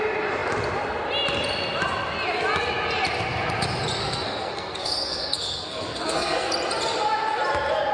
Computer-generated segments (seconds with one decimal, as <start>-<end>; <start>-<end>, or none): 4.0-6.5